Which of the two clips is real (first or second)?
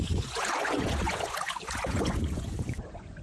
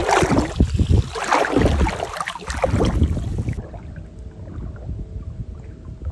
second